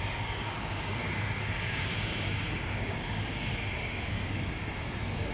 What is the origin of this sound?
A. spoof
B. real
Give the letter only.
A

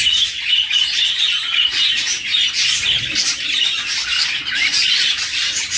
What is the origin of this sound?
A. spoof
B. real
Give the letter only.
B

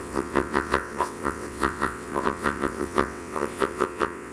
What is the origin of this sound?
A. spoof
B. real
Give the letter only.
A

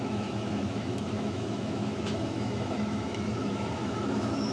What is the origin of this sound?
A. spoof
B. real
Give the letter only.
A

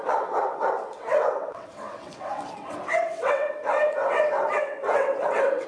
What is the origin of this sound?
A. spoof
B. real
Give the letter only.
A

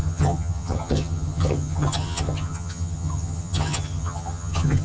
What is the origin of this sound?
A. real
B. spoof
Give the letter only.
B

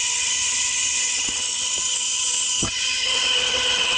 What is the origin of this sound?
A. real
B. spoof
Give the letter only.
B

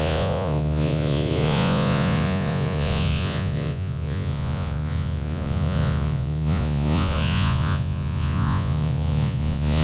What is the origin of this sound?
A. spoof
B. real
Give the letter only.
A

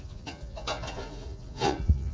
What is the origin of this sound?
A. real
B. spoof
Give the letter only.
B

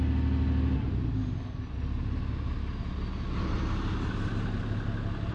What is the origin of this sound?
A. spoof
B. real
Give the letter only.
B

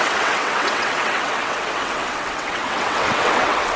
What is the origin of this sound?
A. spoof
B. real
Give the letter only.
A